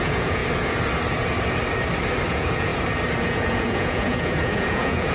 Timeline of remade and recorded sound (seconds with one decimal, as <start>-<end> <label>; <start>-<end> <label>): 0.0-0.4 remade; 0.4-2.3 recorded; 2.3-2.7 remade; 2.7-3.2 recorded; 3.2-5.1 remade